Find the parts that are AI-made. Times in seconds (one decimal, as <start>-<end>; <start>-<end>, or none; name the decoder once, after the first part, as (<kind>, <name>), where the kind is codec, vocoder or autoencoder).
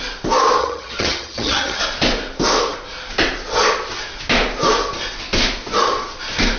0.6-1.8 (vocoder, HiFi-GAN)